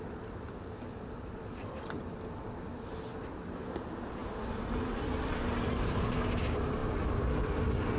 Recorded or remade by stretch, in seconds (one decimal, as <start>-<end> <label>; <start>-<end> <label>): 0.0-4.2 remade; 4.2-5.6 recorded; 5.6-6.8 remade; 6.8-8.0 recorded